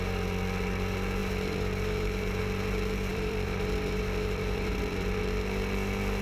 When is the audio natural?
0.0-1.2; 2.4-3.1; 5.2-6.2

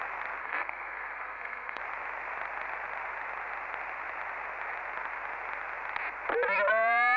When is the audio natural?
0.0-0.4; 1.8-7.2